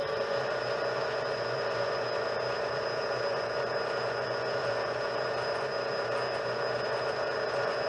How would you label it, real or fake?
fake